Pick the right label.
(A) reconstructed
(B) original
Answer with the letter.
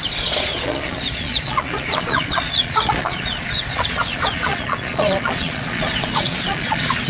A